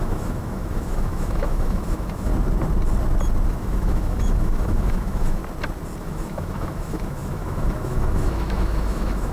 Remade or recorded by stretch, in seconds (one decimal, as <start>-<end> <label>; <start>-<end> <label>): 0.0-2.3 remade; 2.3-3.5 recorded; 3.5-5.4 remade; 5.4-6.0 recorded; 6.0-9.3 remade

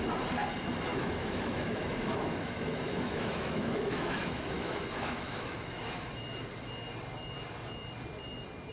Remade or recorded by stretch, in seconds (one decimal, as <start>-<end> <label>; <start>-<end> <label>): 0.0-0.9 recorded; 0.9-6.1 remade; 6.1-8.7 recorded

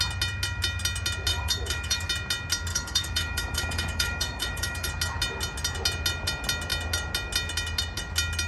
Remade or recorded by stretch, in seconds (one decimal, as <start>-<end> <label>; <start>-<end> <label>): 0.0-1.3 recorded; 1.3-2.1 remade; 2.1-2.7 recorded; 2.7-4.9 remade; 4.9-8.5 recorded

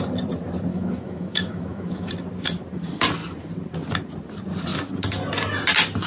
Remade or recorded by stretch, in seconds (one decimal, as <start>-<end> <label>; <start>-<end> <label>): 0.0-0.7 recorded; 0.7-2.1 remade; 2.1-6.1 recorded